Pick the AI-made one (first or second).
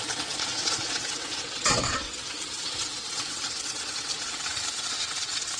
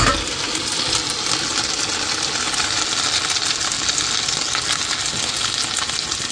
first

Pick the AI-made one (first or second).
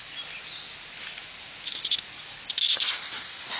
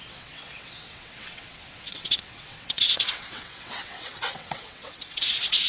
second